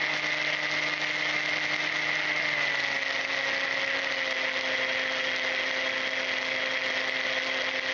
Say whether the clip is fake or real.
real